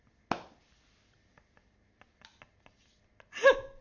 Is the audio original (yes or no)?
yes